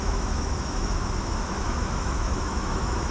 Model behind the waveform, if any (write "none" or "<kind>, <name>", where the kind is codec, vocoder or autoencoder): autoencoder, DAC-VAE